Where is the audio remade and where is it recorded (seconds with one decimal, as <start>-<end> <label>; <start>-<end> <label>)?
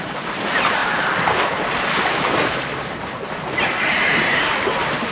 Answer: 0.0-5.1 remade